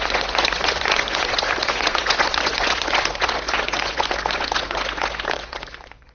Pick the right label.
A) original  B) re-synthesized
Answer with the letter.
B